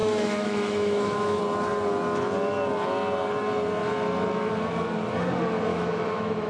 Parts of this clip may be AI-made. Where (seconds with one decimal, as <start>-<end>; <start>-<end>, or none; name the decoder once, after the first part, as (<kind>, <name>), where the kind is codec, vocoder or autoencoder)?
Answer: 0.0-1.4 (autoencoder, DAC-VAE); 5.7-6.5